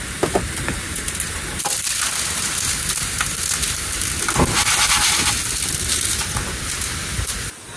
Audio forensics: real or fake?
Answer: real